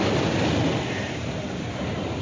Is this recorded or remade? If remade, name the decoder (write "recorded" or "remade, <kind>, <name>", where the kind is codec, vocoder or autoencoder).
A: recorded